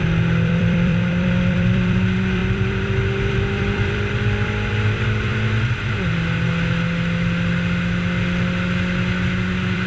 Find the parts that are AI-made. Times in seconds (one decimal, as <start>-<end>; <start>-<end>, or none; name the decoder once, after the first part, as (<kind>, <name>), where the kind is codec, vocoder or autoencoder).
0.0-5.3 (vocoder, BigVGAN v2); 9.5-9.9

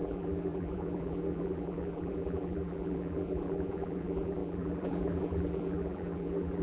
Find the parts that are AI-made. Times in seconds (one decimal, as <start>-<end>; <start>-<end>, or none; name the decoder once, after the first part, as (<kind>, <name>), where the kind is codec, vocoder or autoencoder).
0.0-6.6 (vocoder, BigVGAN v2)

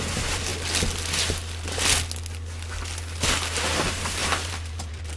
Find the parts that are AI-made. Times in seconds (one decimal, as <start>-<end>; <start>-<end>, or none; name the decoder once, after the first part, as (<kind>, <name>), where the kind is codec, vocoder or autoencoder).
0.0-0.5 (vocoder, BigVGAN v2); 3.6-5.2

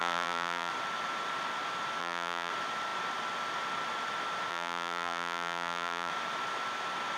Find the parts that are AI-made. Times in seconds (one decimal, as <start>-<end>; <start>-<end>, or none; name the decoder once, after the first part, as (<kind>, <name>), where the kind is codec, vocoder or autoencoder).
0.0-0.7 (vocoder, BigVGAN v2); 2.0-2.5; 4.5-6.1